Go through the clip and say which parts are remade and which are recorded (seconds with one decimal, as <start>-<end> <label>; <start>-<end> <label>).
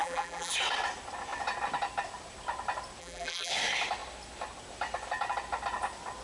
0.0-0.5 remade; 0.5-3.0 recorded; 3.0-3.5 remade; 3.5-6.2 recorded